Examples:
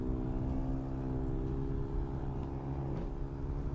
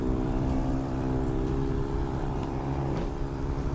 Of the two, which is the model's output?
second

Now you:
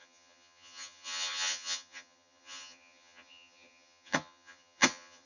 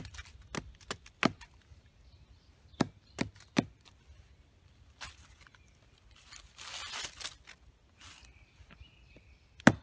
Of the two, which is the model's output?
first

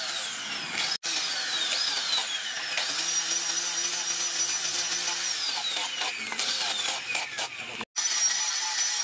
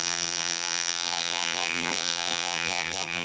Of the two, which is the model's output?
second